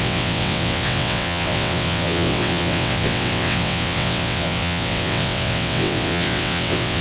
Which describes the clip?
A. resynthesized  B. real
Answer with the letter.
A